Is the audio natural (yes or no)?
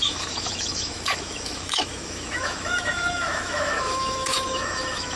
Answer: no